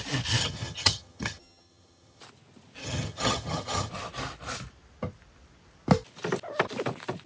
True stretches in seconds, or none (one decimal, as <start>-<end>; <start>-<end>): 0.0-0.4; 2.2-2.8; 3.9-7.3